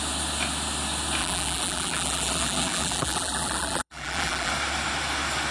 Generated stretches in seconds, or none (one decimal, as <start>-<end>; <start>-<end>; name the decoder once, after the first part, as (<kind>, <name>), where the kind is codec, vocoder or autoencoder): 1.2-4.5 (vocoder, BigVGAN v2)